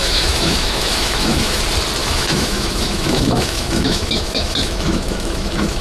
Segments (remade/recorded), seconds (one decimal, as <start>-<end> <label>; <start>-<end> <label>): 0.0-1.6 remade; 1.6-2.0 recorded; 2.0-5.8 remade